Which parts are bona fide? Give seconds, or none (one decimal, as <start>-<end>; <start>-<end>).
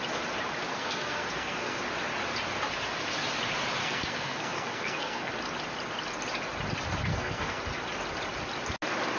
0.0-0.7; 1.8-3.8; 5.3-7.1; 7.6-9.2